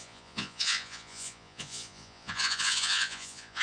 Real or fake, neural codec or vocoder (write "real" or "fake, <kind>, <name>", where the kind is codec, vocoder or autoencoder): fake, vocoder, Vocos